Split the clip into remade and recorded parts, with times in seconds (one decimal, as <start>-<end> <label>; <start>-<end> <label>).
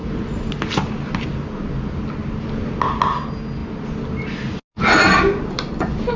0.0-6.2 recorded